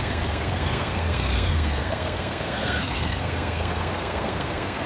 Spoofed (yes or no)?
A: yes